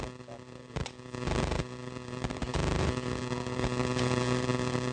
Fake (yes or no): yes